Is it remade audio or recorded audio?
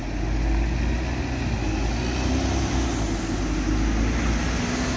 recorded